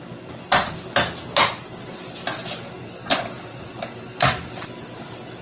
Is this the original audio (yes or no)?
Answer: yes